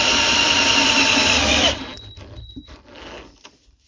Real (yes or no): no